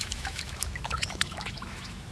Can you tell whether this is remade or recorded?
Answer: remade